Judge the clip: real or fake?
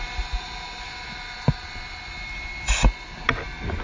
real